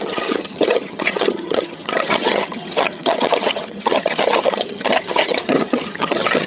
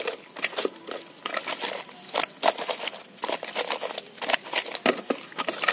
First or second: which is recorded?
second